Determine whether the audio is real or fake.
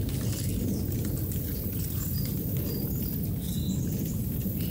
real